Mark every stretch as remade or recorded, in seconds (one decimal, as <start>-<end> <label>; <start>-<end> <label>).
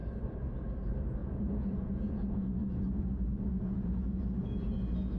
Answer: 0.0-1.2 recorded; 1.2-4.2 remade; 4.2-5.2 recorded